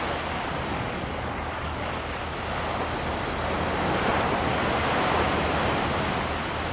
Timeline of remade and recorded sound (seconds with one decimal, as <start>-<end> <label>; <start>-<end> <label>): 0.0-0.7 recorded; 0.7-2.2 remade; 2.2-6.7 recorded